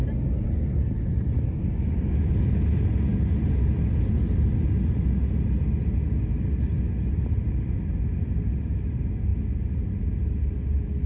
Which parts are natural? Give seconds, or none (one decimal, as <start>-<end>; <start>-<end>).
0.0-11.1